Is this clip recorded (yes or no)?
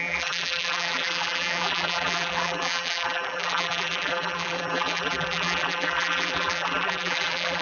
no